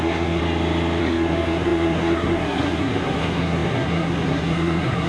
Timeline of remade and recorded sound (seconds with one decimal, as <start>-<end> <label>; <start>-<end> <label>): 0.0-0.4 remade; 0.4-1.0 recorded; 1.0-5.1 remade